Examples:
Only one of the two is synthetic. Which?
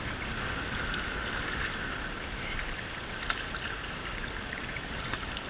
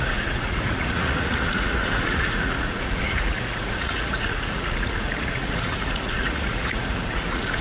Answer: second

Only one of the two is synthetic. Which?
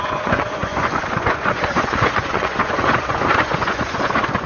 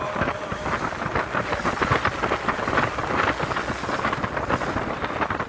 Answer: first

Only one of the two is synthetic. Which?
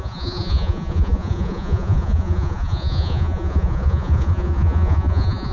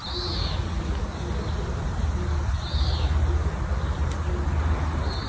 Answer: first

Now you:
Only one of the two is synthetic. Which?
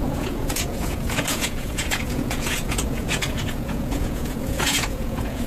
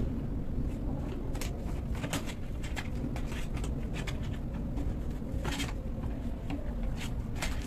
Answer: first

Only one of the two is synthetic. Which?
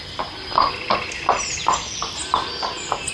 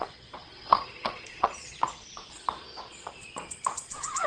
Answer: second